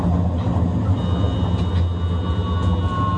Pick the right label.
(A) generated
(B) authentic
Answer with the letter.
B